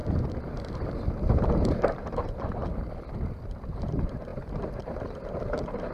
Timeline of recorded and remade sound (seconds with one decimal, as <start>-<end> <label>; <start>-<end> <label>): 0.0-2.6 remade; 2.6-3.4 recorded; 3.4-5.9 remade